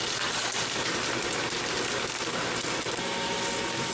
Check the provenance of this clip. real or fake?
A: real